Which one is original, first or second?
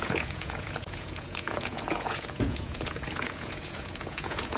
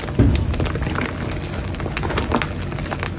second